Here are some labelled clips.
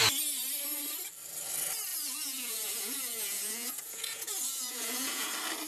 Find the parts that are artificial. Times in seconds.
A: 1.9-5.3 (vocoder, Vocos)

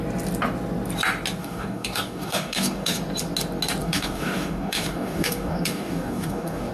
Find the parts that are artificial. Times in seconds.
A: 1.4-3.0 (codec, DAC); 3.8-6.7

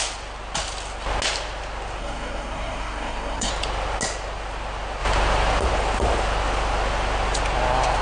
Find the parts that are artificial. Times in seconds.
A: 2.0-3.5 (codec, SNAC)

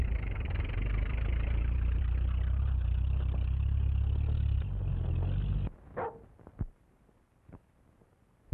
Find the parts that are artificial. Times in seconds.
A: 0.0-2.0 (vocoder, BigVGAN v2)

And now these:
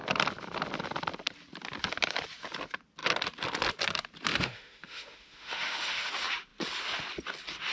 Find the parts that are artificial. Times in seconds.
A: 4.3-6.1 (autoencoder, DAC-VAE)

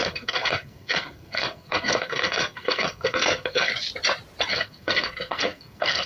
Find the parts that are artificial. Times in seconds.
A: 0.0-3.7 (codec, SNAC); 4.5-6.1

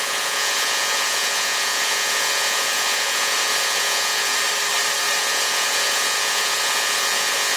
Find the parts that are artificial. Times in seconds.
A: 0.0-4.3 (vocoder, Vocos); 5.2-7.6

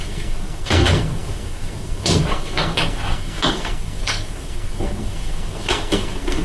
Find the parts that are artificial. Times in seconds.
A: 0.0-6.4 (codec, SNAC)